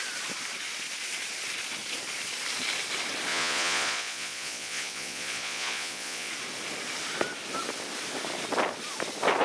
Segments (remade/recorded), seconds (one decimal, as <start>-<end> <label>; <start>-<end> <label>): 0.0-3.3 recorded; 3.3-6.3 remade; 6.3-9.4 recorded